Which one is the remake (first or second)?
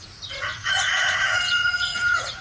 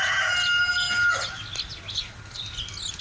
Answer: first